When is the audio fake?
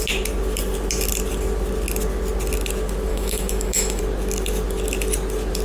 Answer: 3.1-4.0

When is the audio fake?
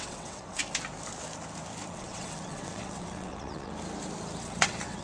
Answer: 0.0-0.6; 1.9-3.7; 4.4-5.0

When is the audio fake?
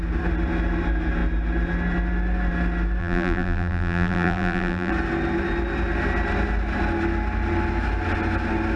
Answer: 3.0-4.9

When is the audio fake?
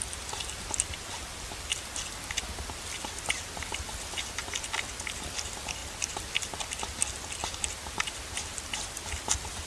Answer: none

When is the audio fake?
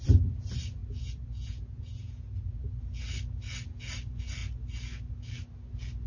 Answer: 0.8-2.8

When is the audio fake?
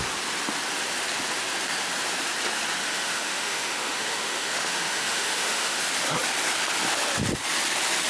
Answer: 2.8-5.8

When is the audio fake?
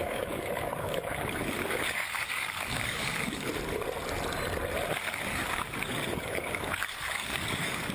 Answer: 0.0-3.5; 4.9-7.9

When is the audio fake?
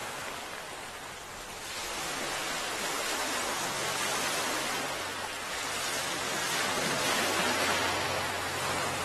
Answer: 0.0-0.6